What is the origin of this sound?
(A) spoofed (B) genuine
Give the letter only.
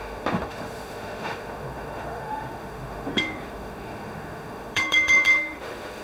A